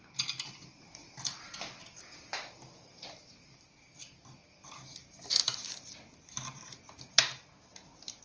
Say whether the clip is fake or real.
real